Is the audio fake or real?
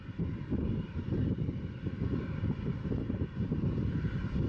real